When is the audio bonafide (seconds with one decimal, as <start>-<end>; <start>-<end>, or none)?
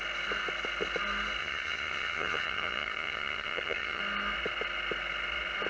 0.0-1.4; 4.0-5.7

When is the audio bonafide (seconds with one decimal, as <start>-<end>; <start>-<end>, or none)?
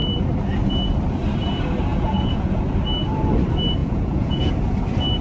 0.0-1.9; 2.6-3.8; 4.5-5.2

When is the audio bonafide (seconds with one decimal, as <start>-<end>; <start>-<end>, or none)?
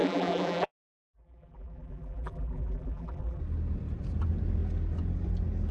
0.7-1.1; 3.4-5.7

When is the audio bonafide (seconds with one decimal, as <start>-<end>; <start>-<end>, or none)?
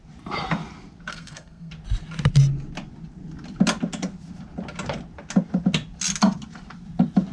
0.0-1.1; 1.7-7.3